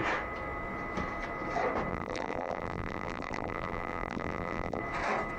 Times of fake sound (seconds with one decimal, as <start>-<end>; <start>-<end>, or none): 1.9-4.8